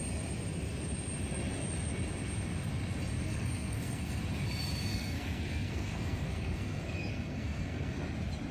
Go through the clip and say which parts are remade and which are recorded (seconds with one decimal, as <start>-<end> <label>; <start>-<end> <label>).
0.0-3.2 recorded; 3.2-4.2 remade; 4.2-4.9 recorded; 4.9-8.0 remade; 8.0-8.5 recorded

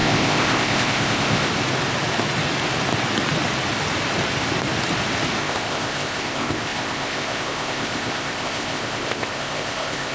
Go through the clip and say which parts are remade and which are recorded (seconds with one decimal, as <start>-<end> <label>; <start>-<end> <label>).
0.0-1.5 remade; 1.5-5.4 recorded; 5.4-10.1 remade

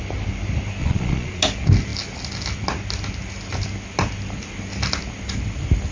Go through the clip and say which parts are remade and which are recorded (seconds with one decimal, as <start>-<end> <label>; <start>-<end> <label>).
0.0-0.8 recorded; 0.8-1.4 remade; 1.4-5.9 recorded